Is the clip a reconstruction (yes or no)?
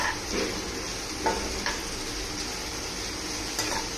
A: no